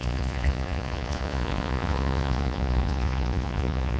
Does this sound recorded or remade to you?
remade